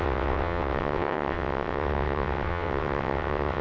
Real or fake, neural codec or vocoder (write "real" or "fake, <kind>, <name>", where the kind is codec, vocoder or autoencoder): fake, vocoder, WaveNeXt